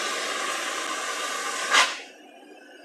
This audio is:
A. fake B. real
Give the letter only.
B